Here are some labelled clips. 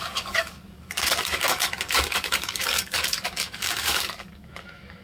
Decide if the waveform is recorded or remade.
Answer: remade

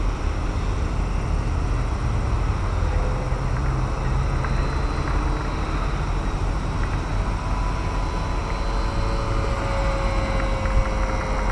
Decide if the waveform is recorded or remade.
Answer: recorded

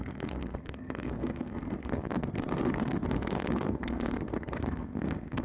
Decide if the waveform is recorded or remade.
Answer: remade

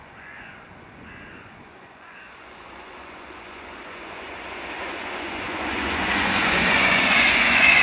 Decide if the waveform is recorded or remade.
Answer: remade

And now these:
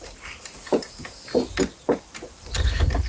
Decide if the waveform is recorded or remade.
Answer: recorded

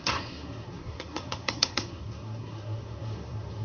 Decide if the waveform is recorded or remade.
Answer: remade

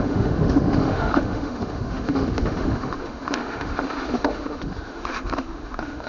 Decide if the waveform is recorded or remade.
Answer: remade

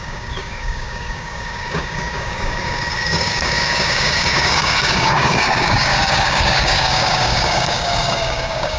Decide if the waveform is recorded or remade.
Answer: remade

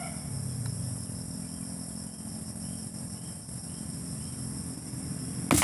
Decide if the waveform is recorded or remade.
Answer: recorded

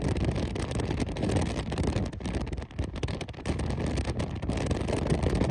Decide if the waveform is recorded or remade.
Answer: recorded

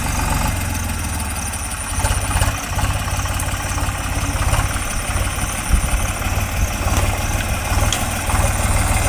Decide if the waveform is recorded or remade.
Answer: recorded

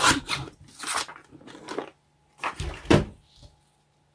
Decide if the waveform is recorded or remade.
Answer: recorded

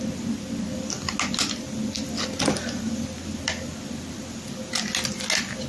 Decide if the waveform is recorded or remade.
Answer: recorded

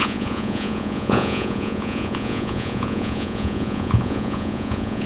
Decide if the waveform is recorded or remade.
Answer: remade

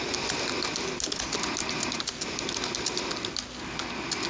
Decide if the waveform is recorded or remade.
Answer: recorded